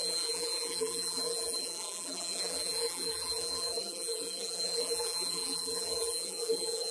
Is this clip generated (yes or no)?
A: yes